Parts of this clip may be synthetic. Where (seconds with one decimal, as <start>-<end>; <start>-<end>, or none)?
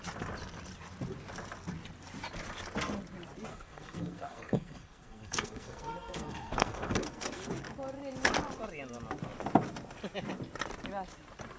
3.5-7.5